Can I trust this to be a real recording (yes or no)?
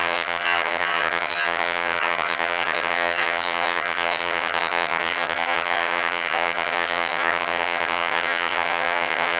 no